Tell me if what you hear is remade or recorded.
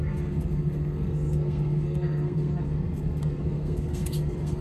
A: remade